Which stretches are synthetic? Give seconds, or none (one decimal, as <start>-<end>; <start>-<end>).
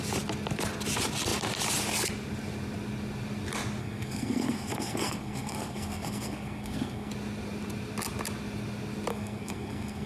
3.8-7.1; 9.1-10.1